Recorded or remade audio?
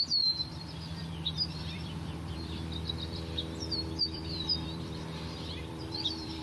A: remade